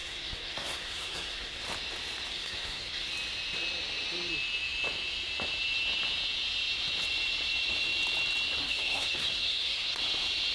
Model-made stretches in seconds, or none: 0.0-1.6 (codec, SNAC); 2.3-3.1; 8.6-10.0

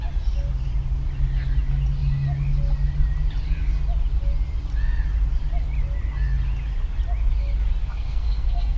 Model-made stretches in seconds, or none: 7.8-8.8 (codec, SNAC)

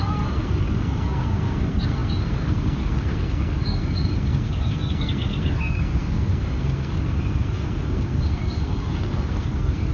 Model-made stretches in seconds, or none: 0.0-9.9 (codec, SNAC)

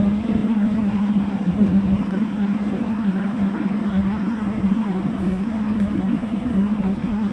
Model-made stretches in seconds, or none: 0.0-7.3 (codec, SNAC)

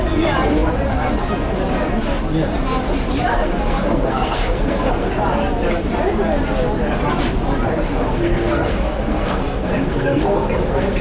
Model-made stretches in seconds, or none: 3.3-5.1 (codec, SNAC); 7.9-11.0

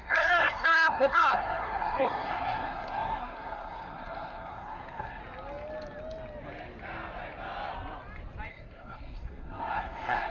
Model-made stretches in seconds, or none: 0.0-5.2 (codec, SNAC); 8.5-10.3

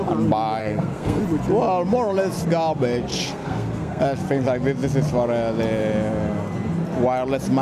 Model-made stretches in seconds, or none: 0.6-1.2 (codec, SNAC); 3.1-4.0

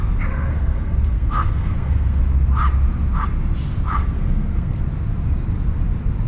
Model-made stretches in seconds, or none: 0.5-2.2 (codec, SNAC); 4.0-4.8